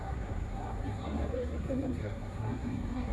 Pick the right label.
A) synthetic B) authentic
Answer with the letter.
A